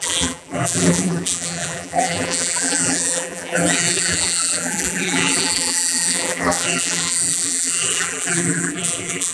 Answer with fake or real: fake